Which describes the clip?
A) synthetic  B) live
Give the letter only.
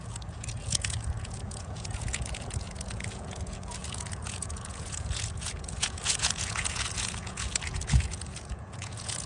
A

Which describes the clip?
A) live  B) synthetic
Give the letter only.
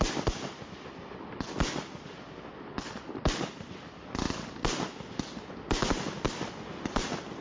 A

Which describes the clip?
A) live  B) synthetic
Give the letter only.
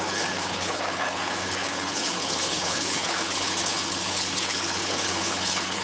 B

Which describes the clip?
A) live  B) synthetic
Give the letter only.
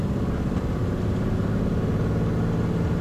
A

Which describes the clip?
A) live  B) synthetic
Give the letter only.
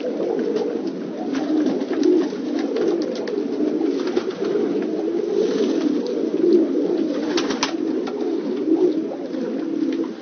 A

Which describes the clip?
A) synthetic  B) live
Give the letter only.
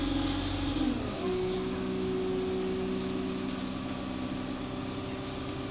B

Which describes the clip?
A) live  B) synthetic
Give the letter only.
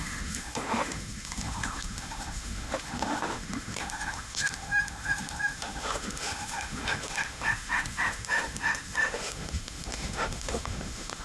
B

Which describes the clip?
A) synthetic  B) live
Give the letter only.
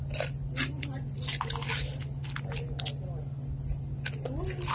B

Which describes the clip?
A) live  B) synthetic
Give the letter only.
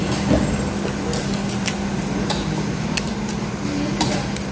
A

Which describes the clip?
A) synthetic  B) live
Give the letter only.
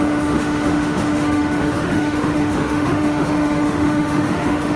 A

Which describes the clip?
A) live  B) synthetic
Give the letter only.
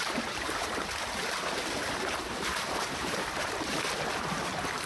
B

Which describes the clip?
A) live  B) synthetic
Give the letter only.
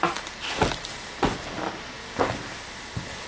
A